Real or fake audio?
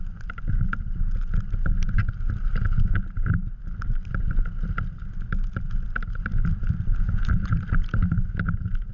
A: real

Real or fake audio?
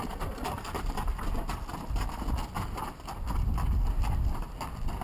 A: real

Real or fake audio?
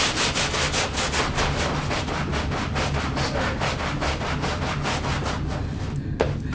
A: real